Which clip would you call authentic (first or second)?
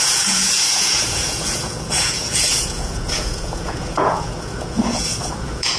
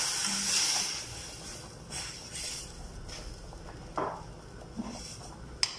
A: second